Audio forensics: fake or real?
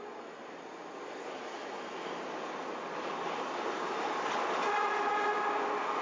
real